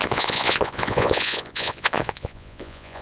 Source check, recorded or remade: remade